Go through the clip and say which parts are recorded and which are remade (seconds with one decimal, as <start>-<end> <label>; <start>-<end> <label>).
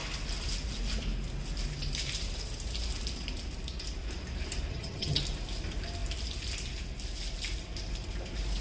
0.0-4.7 recorded; 4.7-5.2 remade; 5.2-8.6 recorded